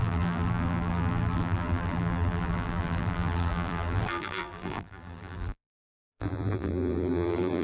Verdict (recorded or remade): remade